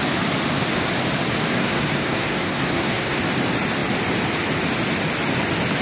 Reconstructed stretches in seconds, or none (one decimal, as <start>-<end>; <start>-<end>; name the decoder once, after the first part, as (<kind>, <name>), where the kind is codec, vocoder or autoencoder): 1.5-3.2 (codec, SNAC)